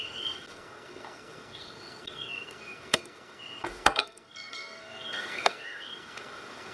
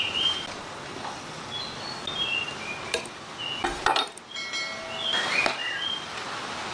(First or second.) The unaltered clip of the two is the second